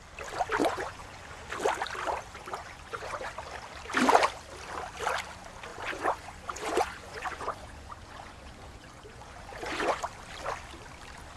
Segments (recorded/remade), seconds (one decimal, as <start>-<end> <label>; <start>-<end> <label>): 0.0-0.6 recorded; 0.6-1.4 remade; 1.4-2.6 recorded; 2.6-3.3 remade; 3.3-5.7 recorded; 5.7-10.0 remade; 10.0-11.4 recorded